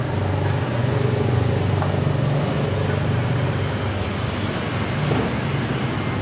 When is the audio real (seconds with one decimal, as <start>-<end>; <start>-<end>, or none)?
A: 0.0-0.8; 1.5-6.2